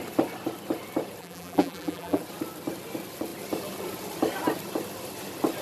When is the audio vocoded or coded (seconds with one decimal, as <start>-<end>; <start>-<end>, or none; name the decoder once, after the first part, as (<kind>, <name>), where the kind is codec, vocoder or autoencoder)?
1.2-2.2 (vocoder, BigVGAN v2)